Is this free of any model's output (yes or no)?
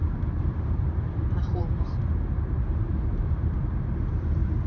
no